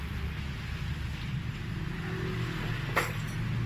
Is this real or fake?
real